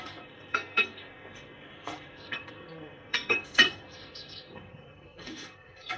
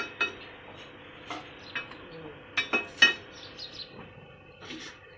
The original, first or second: second